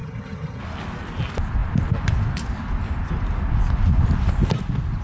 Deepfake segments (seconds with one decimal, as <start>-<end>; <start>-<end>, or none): 0.0-0.6